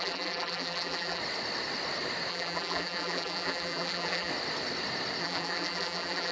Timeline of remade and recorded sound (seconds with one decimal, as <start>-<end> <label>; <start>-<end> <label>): 0.0-1.2 remade; 1.2-2.3 recorded; 2.3-4.3 remade; 4.3-5.2 recorded; 5.2-6.3 remade